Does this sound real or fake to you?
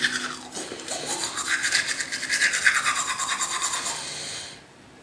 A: real